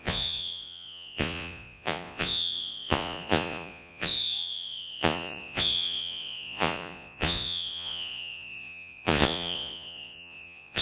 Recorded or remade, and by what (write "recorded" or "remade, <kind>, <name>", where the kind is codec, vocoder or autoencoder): remade, vocoder, Vocos